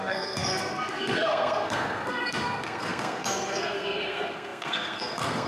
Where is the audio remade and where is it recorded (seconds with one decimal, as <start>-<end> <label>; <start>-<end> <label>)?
0.0-5.5 remade